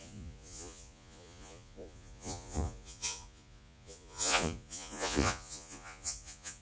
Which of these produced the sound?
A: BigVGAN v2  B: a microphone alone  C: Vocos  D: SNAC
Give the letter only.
C